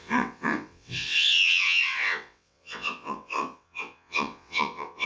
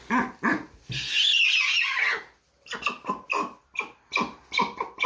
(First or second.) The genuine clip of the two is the second